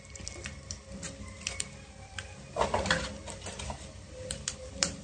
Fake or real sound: fake